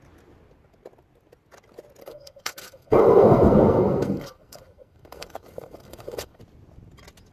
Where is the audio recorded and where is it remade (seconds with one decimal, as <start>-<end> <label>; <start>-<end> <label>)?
0.0-2.0 recorded; 2.0-6.4 remade; 6.4-7.3 recorded